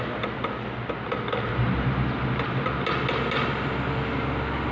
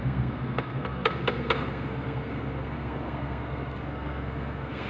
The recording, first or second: first